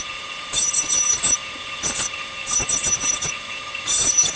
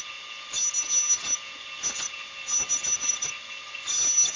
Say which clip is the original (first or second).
second